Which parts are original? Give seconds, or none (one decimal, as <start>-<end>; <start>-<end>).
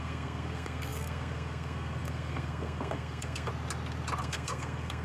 3.5-4.2